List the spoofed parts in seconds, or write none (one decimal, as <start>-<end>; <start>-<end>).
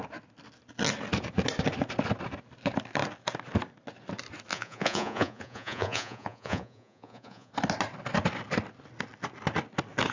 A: 4.5-7.5